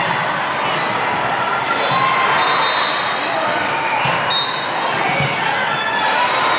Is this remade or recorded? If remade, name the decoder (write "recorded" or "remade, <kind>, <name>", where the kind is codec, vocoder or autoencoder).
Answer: recorded